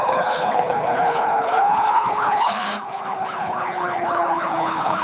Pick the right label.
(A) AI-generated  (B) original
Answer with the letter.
A